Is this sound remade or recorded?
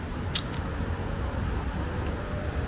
recorded